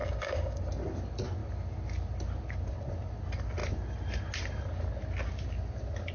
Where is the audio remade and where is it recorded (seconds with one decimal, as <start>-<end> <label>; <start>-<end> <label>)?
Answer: 0.0-0.6 remade; 0.6-6.1 recorded